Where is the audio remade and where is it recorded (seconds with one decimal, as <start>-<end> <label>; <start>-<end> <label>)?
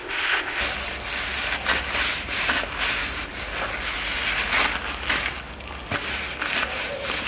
0.0-0.6 remade; 0.6-7.3 recorded